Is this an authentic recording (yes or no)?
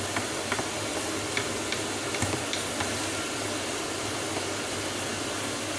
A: yes